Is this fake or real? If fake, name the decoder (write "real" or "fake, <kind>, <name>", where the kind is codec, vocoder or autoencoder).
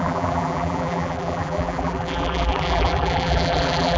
fake, vocoder, BigVGAN v2